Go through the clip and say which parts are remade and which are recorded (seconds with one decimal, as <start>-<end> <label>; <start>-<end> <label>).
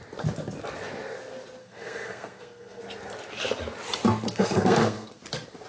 0.0-1.6 recorded; 1.6-2.8 remade; 2.8-4.3 recorded; 4.3-5.2 remade; 5.2-5.7 recorded